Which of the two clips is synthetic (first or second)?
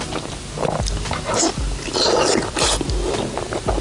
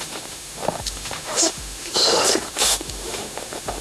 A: second